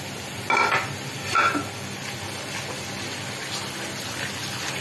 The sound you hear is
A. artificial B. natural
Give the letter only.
B